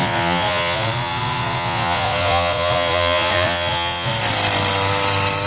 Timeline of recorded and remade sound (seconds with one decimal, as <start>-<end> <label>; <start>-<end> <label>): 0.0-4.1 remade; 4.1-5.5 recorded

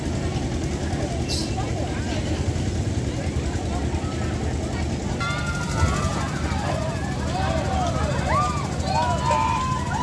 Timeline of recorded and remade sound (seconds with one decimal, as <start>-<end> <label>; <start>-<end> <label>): 0.0-10.0 recorded

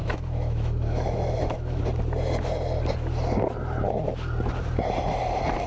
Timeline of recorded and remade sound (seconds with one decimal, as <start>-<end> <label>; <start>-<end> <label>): 0.0-1.8 remade; 1.8-5.7 recorded